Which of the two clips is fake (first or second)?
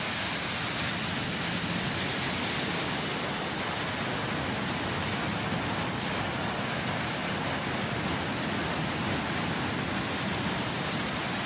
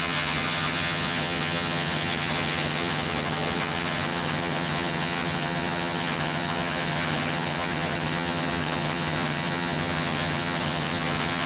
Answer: second